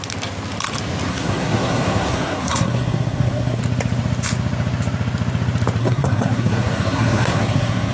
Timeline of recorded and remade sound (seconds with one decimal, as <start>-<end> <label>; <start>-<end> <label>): 0.0-1.1 recorded; 1.1-3.6 remade; 3.6-5.8 recorded; 5.8-7.9 remade